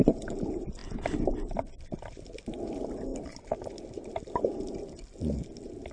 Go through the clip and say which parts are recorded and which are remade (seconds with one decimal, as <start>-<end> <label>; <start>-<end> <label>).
0.0-0.8 remade; 0.8-2.7 recorded; 2.7-3.1 remade; 3.1-5.9 recorded